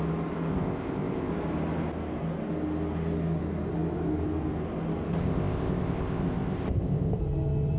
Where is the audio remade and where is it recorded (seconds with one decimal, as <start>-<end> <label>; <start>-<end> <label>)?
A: 0.0-0.5 recorded; 0.5-1.3 remade; 1.3-5.2 recorded; 5.2-7.2 remade; 7.2-7.8 recorded